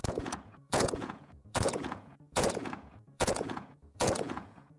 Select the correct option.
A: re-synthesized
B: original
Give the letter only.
A